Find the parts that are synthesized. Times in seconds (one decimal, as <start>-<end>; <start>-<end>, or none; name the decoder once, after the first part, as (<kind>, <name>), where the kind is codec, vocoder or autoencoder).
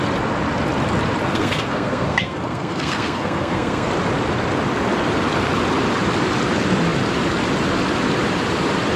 1.3-3.9 (codec, SNAC)